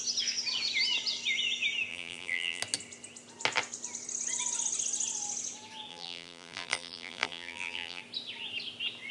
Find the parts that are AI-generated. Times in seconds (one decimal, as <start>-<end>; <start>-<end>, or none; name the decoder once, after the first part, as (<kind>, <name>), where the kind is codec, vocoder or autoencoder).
1.9-2.6 (vocoder, BigVGAN v2); 5.9-8.0